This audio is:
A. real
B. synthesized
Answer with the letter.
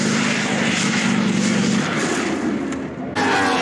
A